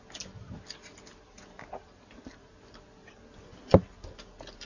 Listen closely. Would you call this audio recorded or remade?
recorded